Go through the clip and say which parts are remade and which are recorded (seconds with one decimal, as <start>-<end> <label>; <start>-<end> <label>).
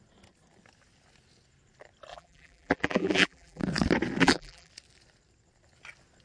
0.0-2.1 recorded; 2.1-3.6 remade; 3.6-4.2 recorded; 4.2-4.7 remade; 4.7-6.2 recorded